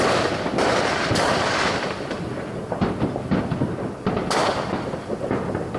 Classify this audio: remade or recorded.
recorded